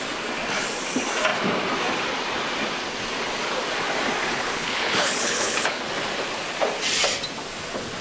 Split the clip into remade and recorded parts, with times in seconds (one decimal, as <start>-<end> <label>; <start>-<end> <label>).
0.0-4.3 recorded; 4.3-5.8 remade; 5.8-8.0 recorded